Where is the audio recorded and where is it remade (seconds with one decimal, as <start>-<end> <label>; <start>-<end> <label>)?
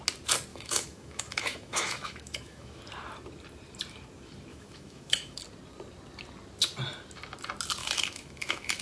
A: 0.0-0.5 recorded; 0.5-2.8 remade; 2.8-4.5 recorded; 4.5-5.4 remade; 5.4-7.8 recorded; 7.8-8.8 remade